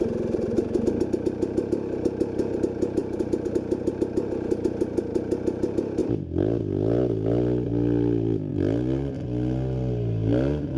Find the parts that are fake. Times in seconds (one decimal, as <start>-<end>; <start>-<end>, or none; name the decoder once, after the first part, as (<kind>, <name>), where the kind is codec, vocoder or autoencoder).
none